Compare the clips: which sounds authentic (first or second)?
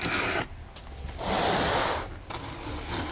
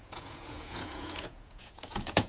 first